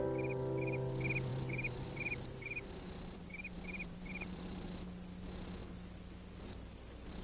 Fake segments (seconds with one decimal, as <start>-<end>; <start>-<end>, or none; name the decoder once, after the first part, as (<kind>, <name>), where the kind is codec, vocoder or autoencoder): 1.3-4.7 (vocoder, BigVGAN v2)